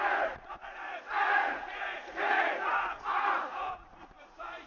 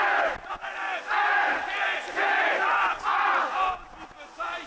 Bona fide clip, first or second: second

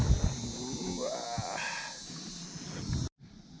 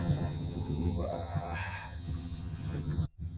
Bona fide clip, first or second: first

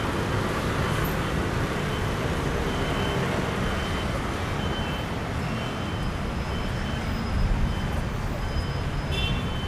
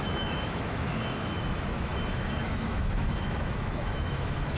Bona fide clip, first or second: first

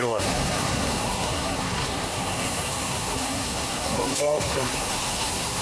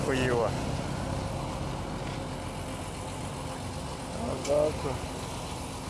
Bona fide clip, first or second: second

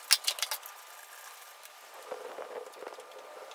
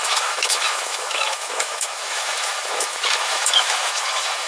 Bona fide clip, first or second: first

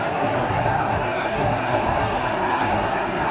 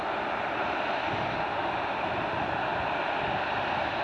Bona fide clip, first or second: second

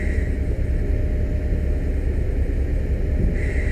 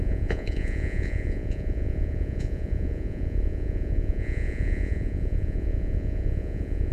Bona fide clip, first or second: first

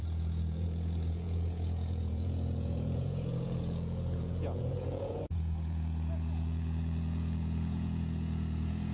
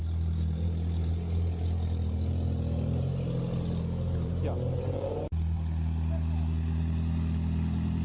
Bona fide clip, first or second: second